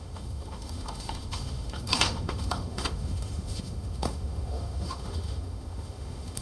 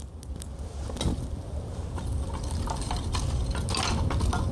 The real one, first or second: second